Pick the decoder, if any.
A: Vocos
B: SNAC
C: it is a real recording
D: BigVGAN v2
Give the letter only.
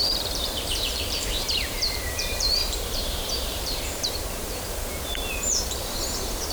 D